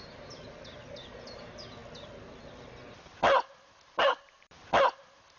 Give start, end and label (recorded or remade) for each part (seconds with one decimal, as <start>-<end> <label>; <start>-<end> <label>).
0.0-5.4 recorded